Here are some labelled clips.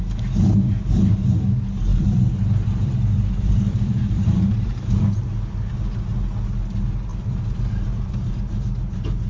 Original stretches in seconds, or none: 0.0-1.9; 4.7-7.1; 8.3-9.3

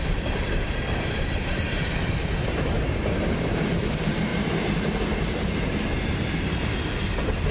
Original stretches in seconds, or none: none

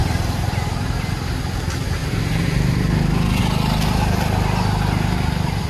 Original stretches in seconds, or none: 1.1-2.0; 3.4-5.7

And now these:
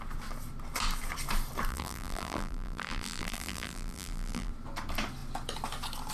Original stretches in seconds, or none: 0.0-1.7; 4.5-6.1

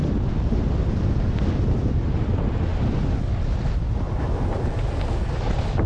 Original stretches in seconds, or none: 0.0-5.9